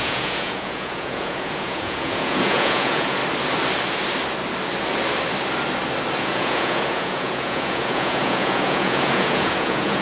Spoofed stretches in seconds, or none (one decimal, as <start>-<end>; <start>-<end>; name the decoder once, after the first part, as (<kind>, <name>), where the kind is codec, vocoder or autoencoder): 0.0-3.2 (vocoder, Vocos); 6.2-10.0